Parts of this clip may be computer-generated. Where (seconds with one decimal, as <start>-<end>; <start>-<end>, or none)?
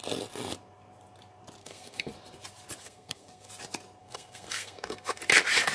1.6-2.1; 2.8-3.5; 4.0-5.2